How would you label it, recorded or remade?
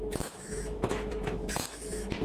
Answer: remade